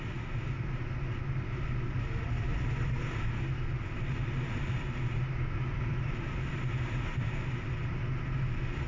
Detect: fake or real real